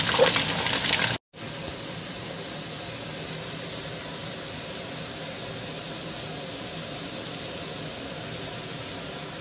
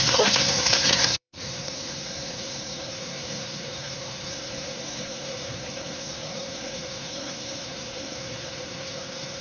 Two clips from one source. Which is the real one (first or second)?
first